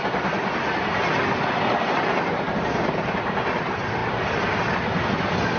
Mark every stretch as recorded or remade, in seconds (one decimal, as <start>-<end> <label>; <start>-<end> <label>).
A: 0.0-5.6 recorded